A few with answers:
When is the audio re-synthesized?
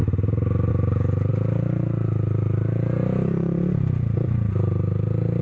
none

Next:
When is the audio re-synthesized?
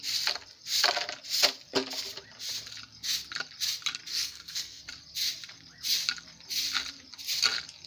4.1-4.8